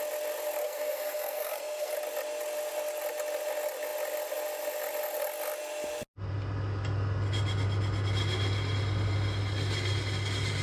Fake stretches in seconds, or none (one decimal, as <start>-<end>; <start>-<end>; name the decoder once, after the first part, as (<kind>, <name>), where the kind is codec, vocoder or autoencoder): 0.6-1.9 (codec, SNAC)